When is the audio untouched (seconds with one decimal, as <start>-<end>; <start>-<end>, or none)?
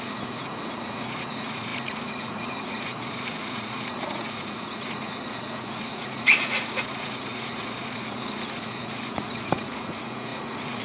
none